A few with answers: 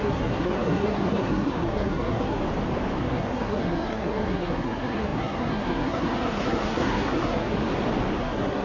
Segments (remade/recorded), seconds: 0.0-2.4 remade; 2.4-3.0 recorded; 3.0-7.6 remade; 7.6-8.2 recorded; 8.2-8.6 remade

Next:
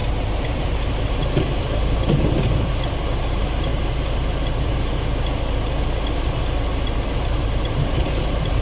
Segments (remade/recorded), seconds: 0.0-3.7 remade; 3.7-7.1 recorded; 7.1-8.6 remade

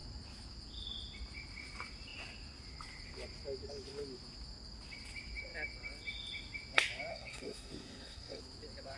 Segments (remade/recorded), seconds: 0.0-7.1 recorded; 7.1-8.4 remade; 8.4-9.0 recorded

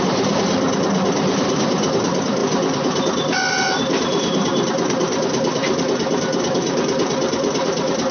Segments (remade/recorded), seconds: 0.0-2.4 remade; 2.4-3.5 recorded; 3.5-8.1 remade

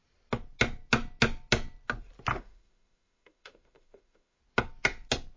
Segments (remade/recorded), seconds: 0.0-2.3 recorded; 2.3-4.4 remade; 4.4-5.4 recorded

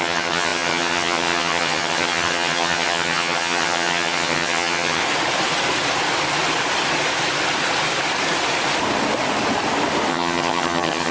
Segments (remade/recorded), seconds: 0.0-5.0 remade; 5.0-10.1 recorded; 10.1-11.1 remade